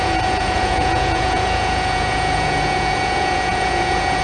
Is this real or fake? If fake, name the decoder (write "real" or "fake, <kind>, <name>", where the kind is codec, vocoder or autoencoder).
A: fake, vocoder, Vocos